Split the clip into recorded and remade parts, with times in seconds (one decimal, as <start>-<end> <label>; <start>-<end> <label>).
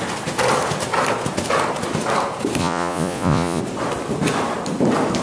0.0-2.6 recorded; 2.6-3.6 remade; 3.6-5.2 recorded